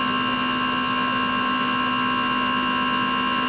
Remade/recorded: recorded